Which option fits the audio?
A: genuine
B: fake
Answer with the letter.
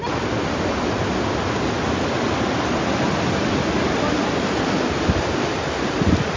A